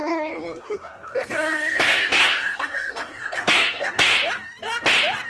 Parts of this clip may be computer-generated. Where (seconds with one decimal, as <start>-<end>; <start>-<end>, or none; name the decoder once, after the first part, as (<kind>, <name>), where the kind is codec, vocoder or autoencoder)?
0.0-4.1 (codec, SNAC)